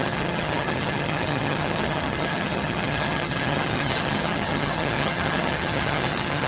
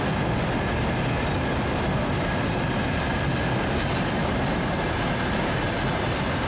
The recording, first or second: second